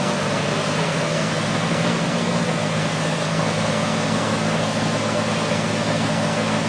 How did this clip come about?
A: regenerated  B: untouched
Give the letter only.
A